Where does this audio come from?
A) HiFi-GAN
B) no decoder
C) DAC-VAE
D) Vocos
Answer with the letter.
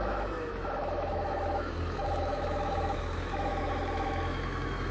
C